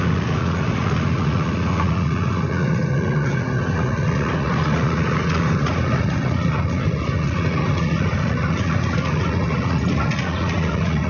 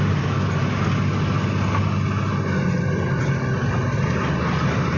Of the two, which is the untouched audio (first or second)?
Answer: second